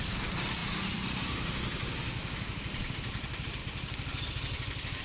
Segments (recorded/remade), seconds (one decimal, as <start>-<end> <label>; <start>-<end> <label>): 0.0-5.0 recorded